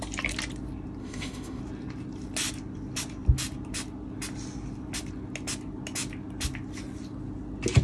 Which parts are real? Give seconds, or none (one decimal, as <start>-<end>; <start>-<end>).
0.0-1.0; 1.6-7.8